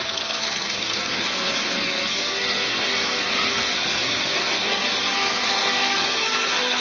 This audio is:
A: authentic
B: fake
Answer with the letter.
B